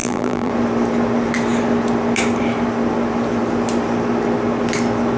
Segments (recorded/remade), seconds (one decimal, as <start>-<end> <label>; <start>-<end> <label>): 0.0-0.5 remade; 0.5-5.2 recorded